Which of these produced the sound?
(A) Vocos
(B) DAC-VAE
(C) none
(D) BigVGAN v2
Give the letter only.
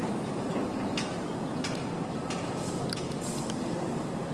D